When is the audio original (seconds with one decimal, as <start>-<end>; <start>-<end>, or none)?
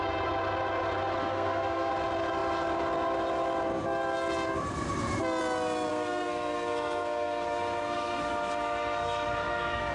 0.0-1.2; 1.9-5.9